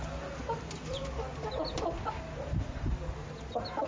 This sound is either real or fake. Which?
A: real